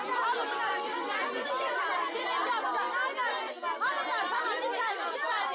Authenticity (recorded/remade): recorded